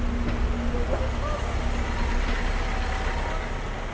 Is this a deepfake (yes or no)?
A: no